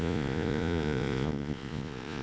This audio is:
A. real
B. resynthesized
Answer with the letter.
B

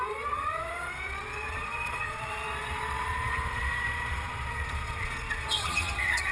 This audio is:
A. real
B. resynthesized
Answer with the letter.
B